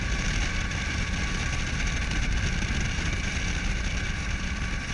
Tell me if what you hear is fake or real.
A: fake